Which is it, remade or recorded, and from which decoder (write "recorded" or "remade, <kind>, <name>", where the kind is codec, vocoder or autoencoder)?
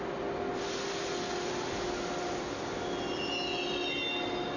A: recorded